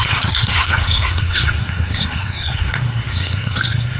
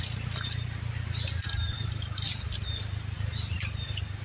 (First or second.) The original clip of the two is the second